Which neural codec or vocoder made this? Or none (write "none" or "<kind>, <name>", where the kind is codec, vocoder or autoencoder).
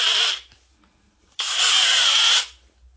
none